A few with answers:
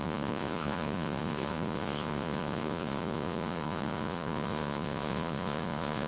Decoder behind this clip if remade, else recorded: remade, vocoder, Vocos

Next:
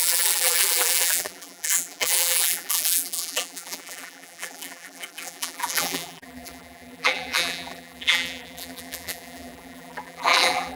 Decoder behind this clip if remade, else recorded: remade, vocoder, BigVGAN v2